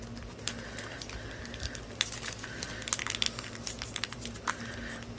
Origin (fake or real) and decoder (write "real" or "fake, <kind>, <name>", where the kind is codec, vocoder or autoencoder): real